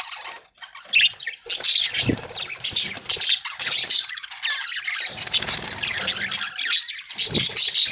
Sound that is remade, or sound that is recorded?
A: recorded